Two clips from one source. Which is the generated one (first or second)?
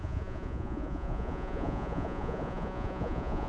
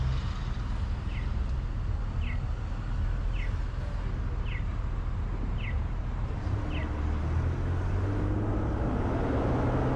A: first